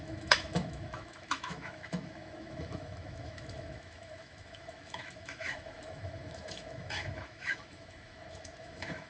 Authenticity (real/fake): fake